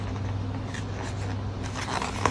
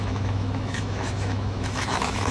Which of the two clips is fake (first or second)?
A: second